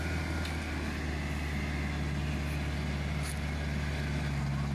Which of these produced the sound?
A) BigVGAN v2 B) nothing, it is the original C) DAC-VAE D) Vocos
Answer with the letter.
B